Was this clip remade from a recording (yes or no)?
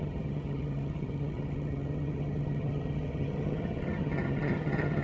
yes